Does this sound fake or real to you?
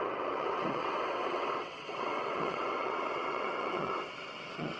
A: fake